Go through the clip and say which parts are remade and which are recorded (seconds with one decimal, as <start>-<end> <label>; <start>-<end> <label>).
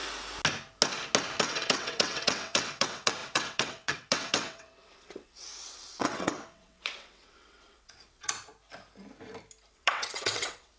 0.0-1.4 recorded; 1.4-8.5 remade; 8.5-9.7 recorded; 9.7-10.8 remade